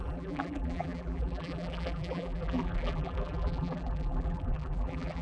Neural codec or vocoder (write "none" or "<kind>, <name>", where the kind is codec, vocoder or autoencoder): vocoder, BigVGAN v2